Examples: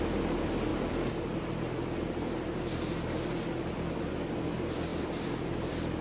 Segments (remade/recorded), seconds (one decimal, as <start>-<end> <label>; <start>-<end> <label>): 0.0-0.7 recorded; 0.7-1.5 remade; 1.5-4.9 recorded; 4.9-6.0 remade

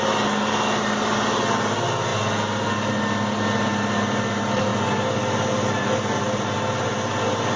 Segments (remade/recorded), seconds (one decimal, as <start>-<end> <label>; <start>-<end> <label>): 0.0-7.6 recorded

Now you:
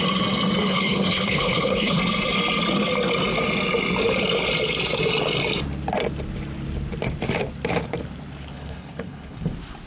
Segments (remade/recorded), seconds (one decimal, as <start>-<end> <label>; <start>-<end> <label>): 0.0-0.6 recorded; 0.6-2.0 remade; 2.0-8.5 recorded; 8.5-9.5 remade; 9.5-9.9 recorded